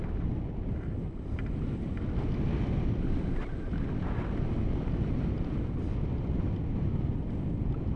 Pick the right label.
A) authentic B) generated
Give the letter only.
A